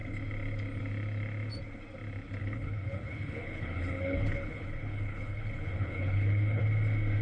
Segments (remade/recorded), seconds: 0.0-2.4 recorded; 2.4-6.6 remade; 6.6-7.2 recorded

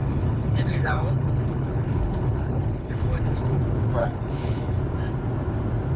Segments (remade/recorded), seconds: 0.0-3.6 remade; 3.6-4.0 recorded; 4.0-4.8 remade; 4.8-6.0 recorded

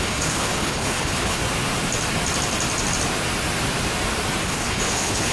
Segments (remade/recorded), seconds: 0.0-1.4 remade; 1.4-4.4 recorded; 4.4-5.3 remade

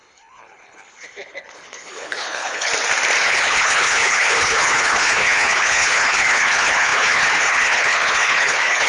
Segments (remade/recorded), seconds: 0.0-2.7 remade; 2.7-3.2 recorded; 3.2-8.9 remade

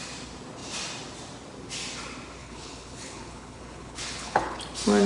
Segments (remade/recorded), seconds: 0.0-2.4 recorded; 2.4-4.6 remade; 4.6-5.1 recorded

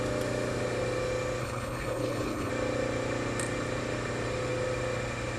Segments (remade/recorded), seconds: 0.0-1.4 recorded; 1.4-2.5 remade; 2.5-5.4 recorded